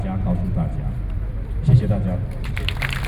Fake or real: real